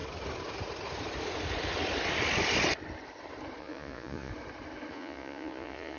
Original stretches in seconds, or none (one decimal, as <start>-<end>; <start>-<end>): 0.0-3.6; 4.3-4.9